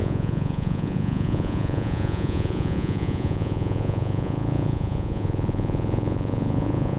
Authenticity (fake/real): fake